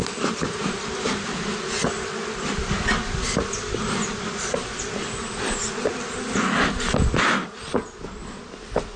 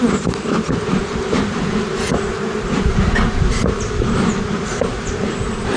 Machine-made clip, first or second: second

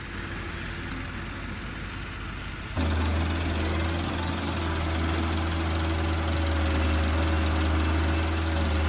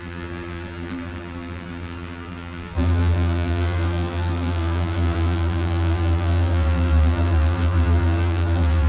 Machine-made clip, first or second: second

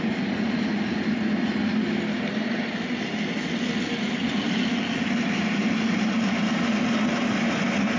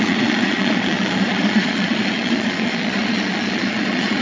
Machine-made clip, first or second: second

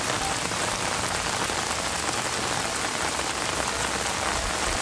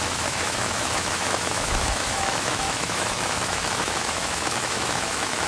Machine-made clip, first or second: second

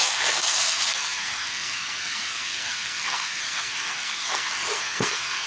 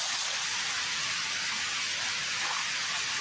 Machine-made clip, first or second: first